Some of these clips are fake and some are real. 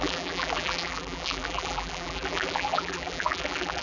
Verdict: fake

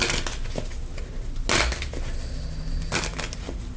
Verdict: real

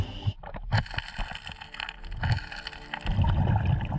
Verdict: real